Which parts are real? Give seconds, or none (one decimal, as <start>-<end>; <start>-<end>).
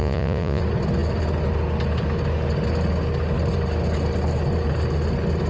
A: 0.6-5.5